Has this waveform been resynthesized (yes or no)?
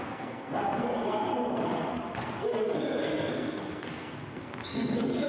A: yes